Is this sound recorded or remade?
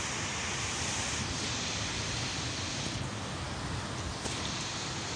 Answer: recorded